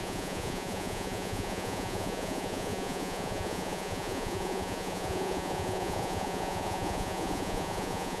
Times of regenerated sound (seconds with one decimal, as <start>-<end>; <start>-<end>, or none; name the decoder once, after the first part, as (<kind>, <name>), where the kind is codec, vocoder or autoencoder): 0.0-8.2 (vocoder, Vocos)